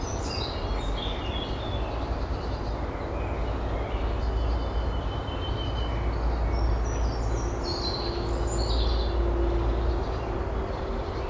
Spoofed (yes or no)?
no